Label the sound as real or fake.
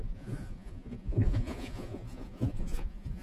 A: fake